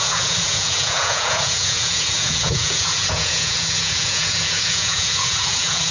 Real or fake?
fake